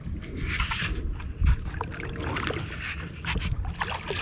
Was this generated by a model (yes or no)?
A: no